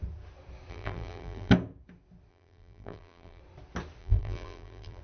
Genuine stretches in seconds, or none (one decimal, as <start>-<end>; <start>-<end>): 0.0-0.7; 1.5-2.3; 3.4-4.0

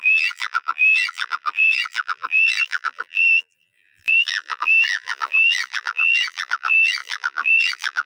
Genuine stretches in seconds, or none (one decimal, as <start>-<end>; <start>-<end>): none

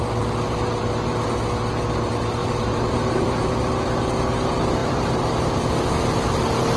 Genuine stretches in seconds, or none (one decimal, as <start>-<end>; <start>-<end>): 0.0-2.4; 3.5-4.8; 5.9-6.8

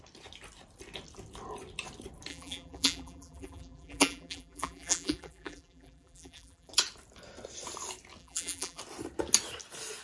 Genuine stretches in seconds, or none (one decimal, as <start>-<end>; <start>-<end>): 0.0-2.3; 6.7-8.2; 8.8-10.0

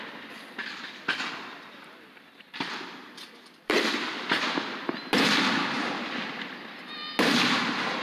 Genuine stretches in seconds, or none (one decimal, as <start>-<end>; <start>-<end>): 0.0-0.6; 4.3-8.0